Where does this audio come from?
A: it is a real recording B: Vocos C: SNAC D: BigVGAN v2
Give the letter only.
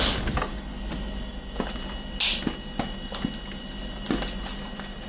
A